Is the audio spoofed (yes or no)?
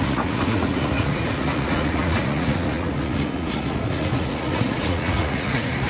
yes